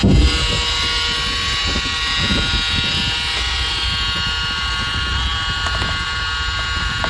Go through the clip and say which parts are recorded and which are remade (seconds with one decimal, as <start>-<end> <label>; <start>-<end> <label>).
0.0-7.1 recorded

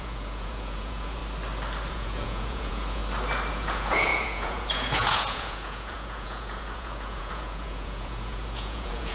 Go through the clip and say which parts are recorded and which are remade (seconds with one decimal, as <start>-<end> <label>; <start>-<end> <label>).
0.0-1.2 remade; 1.2-1.9 recorded; 1.9-3.0 remade; 3.0-3.5 recorded; 3.5-9.1 remade